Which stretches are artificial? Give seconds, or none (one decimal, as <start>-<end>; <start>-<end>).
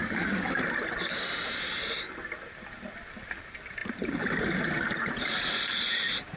0.0-0.6